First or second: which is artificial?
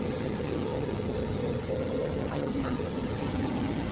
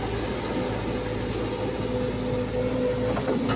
first